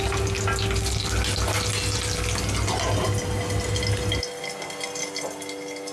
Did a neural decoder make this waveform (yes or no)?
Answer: no